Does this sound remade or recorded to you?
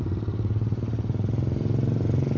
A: recorded